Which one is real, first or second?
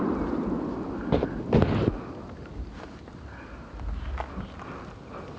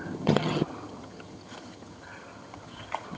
first